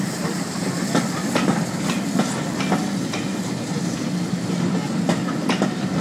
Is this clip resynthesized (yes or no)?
no